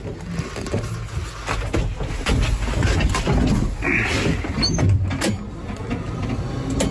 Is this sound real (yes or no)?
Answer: yes